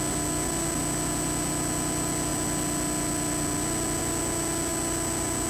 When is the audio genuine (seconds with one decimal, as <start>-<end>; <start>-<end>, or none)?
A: 0.0-5.5